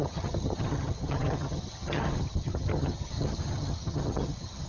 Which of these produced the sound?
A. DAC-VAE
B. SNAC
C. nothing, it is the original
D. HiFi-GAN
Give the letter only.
D